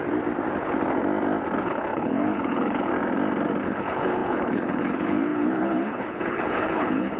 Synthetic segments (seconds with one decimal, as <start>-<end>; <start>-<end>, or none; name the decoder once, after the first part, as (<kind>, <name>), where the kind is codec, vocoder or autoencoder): 1.6-2.9 (codec, HILCodec); 3.6-7.2